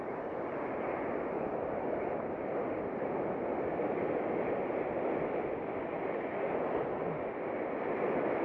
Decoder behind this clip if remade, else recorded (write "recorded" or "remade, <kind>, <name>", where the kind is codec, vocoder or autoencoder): recorded